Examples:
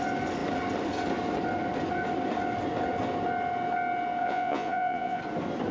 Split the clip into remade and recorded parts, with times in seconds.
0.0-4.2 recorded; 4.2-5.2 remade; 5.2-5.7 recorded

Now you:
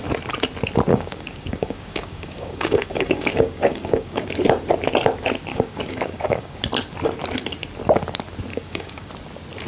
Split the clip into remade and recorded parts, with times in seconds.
0.0-0.9 recorded; 0.9-4.3 remade; 4.3-5.5 recorded; 5.5-6.6 remade; 6.6-8.5 recorded; 8.5-9.1 remade; 9.1-9.7 recorded

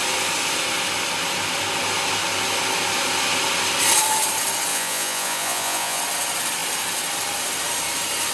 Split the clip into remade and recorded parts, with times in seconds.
0.0-4.7 recorded; 4.7-6.0 remade; 6.0-8.3 recorded

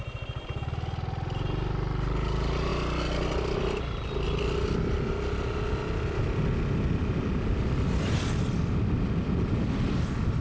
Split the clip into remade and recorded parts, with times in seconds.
0.0-10.4 recorded

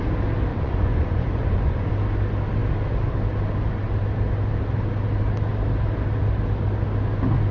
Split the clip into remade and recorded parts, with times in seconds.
0.0-0.5 recorded; 0.5-1.9 remade; 1.9-7.5 recorded

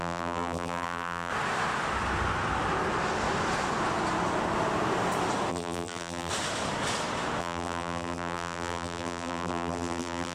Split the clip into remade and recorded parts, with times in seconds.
0.0-1.3 remade; 1.3-5.5 recorded; 5.5-6.3 remade; 6.3-7.4 recorded; 7.4-10.3 remade